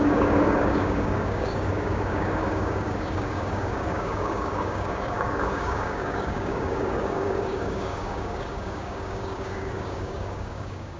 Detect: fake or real fake